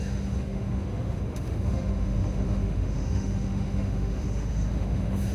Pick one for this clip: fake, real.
fake